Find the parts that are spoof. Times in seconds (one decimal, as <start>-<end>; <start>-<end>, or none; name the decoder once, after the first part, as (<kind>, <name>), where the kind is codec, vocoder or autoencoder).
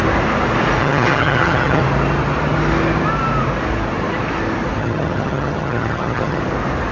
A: 0.8-1.8 (vocoder, HiFi-GAN); 4.8-6.4